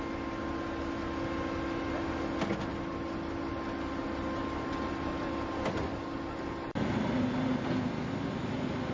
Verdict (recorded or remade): recorded